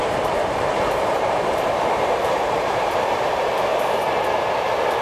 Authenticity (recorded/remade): remade